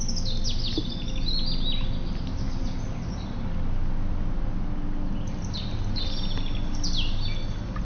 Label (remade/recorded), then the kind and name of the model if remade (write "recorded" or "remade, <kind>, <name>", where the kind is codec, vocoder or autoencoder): recorded